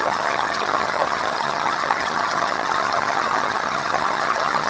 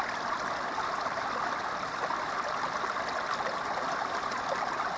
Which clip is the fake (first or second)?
first